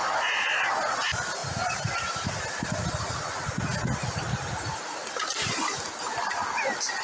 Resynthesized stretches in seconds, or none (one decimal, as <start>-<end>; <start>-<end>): 0.0-0.7; 1.4-2.4; 5.0-5.8